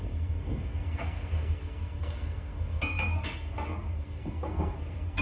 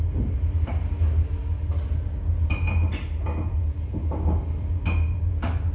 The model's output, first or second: first